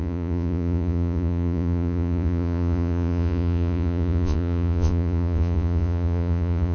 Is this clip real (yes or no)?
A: no